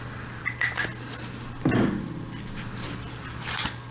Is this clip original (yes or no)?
yes